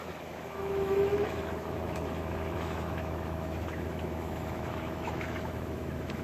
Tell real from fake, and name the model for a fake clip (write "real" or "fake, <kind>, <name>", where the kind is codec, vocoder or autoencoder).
fake, autoencoder, DAC-VAE